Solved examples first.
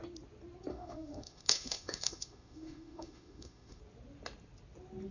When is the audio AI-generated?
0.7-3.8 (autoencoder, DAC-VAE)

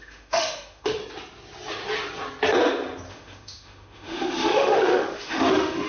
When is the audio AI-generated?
0.0-1.0 (autoencoder, DAC-VAE); 3.1-5.9